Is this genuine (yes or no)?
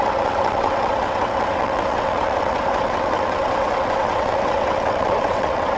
no